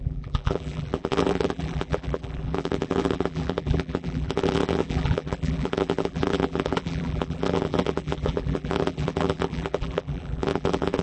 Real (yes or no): no